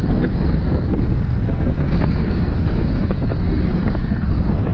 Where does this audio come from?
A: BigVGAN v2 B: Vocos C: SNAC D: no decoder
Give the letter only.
C